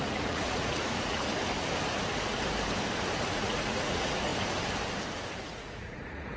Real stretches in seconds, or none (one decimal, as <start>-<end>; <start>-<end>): 1.3-3.2; 4.3-5.4